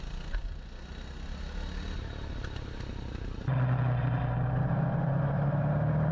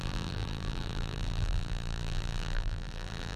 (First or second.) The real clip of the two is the first